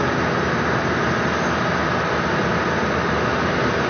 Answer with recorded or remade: recorded